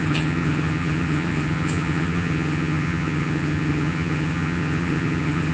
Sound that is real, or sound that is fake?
fake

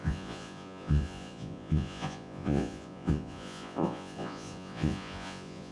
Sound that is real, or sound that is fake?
fake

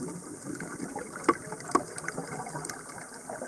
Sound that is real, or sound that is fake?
real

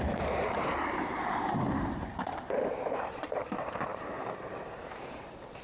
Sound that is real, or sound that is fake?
fake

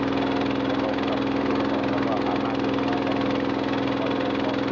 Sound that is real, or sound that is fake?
real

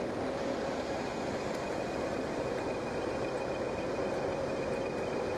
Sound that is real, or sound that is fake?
real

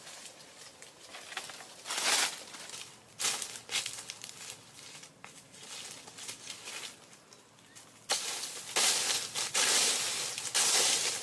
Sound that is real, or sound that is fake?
real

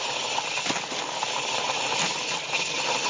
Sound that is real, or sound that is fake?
real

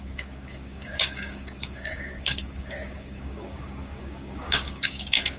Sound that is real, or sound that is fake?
fake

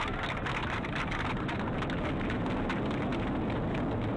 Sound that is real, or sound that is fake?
real